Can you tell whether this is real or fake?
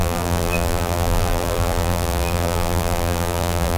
fake